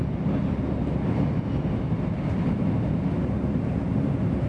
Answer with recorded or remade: recorded